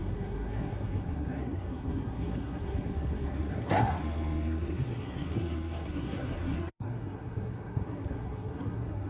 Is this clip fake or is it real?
fake